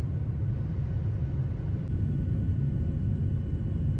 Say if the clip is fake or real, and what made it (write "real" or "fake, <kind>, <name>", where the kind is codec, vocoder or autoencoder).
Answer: real